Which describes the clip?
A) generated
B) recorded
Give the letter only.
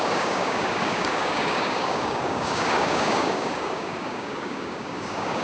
A